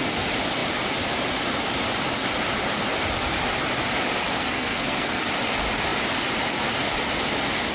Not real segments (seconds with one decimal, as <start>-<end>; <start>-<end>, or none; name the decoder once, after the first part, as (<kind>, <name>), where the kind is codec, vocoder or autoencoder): 4.4-5.2 (codec, SNAC)